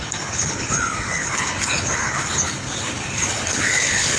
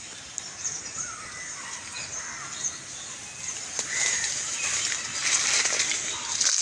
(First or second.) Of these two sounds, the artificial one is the first